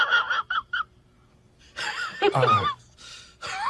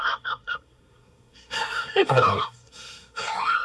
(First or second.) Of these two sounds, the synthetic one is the second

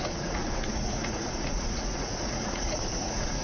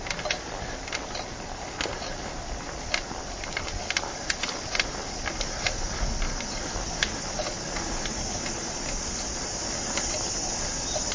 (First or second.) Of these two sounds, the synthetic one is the first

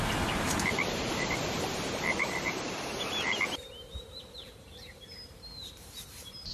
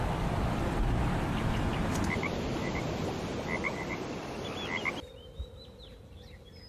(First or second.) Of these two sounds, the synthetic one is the first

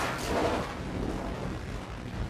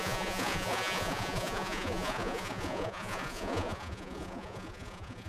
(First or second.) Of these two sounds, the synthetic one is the second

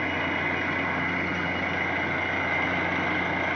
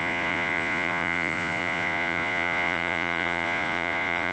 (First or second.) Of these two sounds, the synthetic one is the second